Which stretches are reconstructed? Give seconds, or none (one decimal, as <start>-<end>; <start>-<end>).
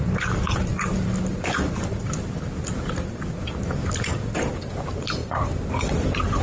0.0-0.7; 4.5-6.4